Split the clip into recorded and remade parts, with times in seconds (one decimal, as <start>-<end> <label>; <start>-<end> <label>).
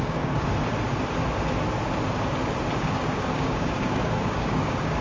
0.0-0.5 remade; 0.5-2.8 recorded; 2.8-5.0 remade